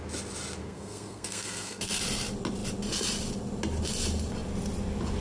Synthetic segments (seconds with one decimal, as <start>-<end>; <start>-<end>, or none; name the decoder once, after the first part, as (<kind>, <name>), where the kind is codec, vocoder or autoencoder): 0.6-2.0 (codec, SNAC)